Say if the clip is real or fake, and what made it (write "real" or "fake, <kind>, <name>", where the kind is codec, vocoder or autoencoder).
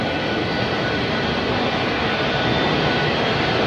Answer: real